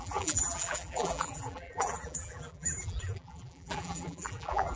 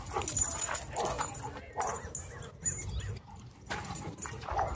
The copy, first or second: first